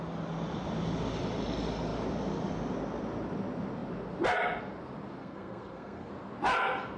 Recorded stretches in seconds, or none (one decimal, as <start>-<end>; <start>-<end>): 0.0-5.2; 6.1-7.0